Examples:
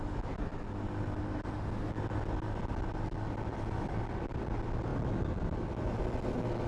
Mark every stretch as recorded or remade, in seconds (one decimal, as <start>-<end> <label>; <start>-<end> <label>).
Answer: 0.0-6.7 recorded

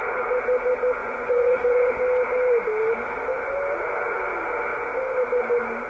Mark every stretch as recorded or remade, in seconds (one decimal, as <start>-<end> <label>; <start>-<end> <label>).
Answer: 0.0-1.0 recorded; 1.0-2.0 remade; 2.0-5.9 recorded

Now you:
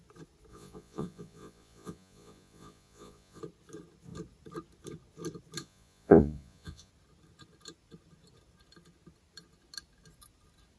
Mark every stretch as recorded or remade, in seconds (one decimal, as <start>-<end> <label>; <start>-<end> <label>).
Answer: 0.0-0.5 recorded; 0.5-3.4 remade; 3.4-5.6 recorded; 5.6-6.9 remade; 6.9-10.8 recorded